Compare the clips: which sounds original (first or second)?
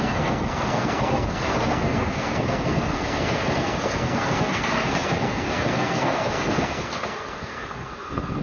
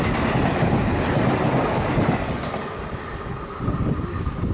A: second